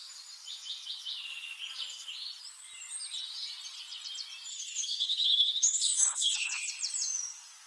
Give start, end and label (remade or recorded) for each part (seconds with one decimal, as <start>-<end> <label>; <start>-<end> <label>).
0.0-4.5 recorded; 4.5-6.7 remade; 6.7-7.7 recorded